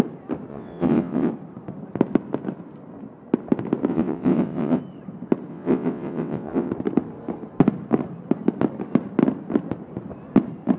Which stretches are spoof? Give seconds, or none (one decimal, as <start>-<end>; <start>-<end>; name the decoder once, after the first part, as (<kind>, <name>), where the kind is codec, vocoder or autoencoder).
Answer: 0.5-1.3 (vocoder, WaveNeXt); 3.9-4.8; 5.5-6.7